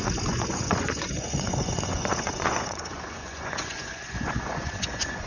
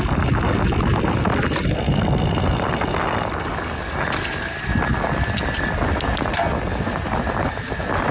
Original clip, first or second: second